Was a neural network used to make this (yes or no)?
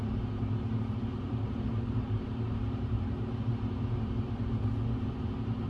yes